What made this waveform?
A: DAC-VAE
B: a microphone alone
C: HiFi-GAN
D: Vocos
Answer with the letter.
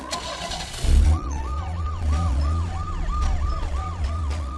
D